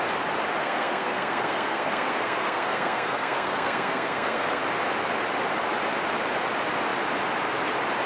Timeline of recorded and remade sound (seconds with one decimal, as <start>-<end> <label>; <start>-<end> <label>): 0.0-0.6 recorded; 0.6-4.6 remade; 4.6-8.1 recorded